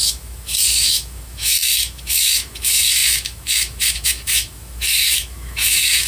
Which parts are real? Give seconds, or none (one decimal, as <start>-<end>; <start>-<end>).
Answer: none